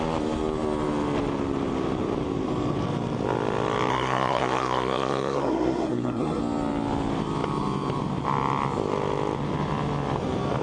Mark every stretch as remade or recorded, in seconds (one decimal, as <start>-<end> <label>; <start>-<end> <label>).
0.0-3.9 recorded; 3.9-6.4 remade; 6.4-10.6 recorded